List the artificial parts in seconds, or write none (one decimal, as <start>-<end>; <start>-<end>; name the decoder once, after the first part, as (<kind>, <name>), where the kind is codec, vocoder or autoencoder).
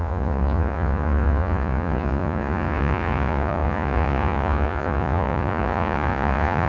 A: 0.0-6.7 (vocoder, Vocos)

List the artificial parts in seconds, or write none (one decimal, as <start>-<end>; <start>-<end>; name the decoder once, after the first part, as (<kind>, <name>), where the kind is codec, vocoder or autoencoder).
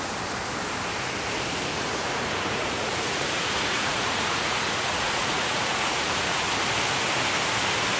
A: 1.7-6.5 (vocoder, Vocos)